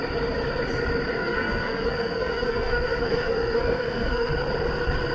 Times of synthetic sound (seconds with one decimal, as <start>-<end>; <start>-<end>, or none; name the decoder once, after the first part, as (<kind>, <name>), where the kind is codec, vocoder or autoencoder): 1.2-4.3 (codec, SNAC)